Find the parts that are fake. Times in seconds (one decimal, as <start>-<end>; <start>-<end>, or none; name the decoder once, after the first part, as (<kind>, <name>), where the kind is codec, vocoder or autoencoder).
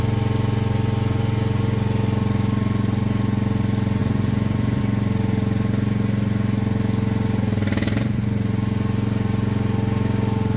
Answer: 4.0-4.8 (vocoder, Vocos)